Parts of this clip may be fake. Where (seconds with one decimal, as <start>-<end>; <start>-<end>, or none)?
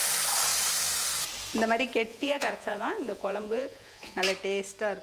2.1-4.2